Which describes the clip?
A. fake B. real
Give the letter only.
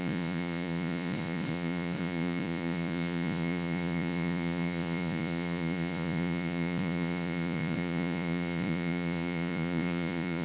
A